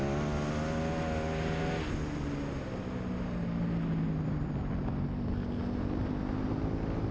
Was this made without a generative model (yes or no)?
yes